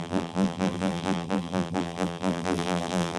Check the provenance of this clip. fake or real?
fake